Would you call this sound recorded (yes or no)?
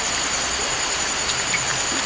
yes